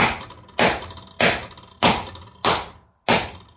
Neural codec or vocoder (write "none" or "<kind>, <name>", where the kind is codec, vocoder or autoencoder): none